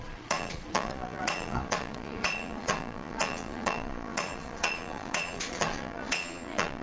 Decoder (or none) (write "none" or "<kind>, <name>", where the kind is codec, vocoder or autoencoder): vocoder, Vocos